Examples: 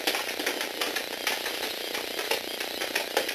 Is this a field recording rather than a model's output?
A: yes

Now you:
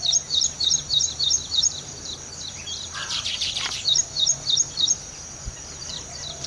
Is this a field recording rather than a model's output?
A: no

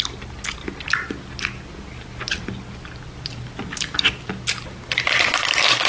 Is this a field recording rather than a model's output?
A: yes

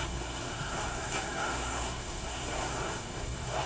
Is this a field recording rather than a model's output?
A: no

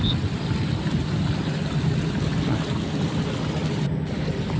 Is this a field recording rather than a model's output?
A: yes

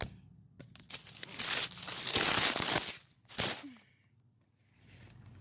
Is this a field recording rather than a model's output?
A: yes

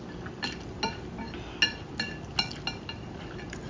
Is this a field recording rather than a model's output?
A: yes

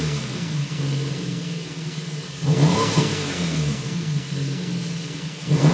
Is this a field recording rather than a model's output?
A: no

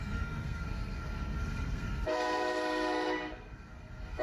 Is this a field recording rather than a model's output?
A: no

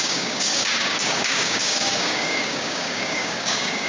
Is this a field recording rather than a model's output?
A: no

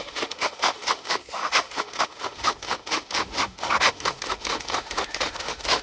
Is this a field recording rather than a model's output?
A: no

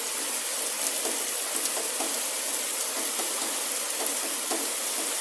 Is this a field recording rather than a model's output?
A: yes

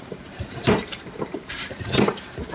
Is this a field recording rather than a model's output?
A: no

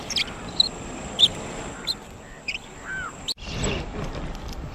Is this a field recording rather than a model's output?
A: yes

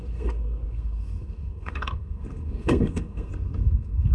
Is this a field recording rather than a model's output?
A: no